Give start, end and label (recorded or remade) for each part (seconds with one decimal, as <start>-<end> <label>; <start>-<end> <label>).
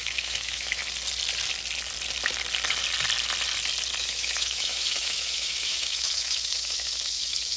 0.0-0.8 remade; 0.8-4.0 recorded; 4.0-7.6 remade